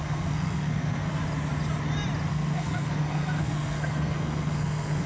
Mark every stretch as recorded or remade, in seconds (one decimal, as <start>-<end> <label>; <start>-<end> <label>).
0.0-1.2 remade; 1.2-2.3 recorded; 2.3-5.1 remade